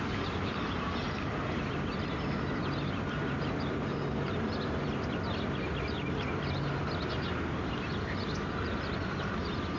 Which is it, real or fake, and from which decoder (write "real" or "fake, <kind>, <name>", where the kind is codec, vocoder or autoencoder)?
real